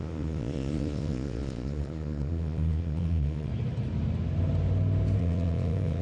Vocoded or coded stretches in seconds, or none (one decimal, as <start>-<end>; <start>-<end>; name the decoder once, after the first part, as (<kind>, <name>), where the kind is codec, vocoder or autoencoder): 0.0-3.5 (vocoder, Vocos); 5.2-6.0